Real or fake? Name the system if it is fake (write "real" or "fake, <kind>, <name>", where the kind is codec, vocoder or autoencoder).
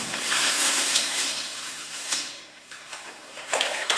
fake, codec, SNAC